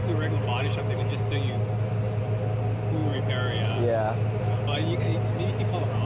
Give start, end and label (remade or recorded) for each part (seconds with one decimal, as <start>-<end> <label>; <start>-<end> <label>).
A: 0.0-6.1 recorded